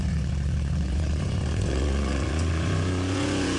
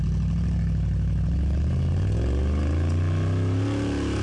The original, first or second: second